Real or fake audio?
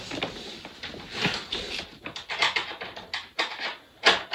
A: real